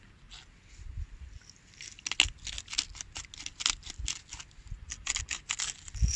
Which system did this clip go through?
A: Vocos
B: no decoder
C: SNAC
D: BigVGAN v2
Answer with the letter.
B